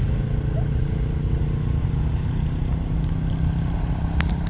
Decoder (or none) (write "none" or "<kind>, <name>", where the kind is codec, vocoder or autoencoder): none